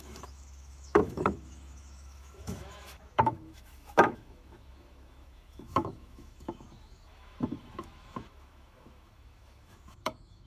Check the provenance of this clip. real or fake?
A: fake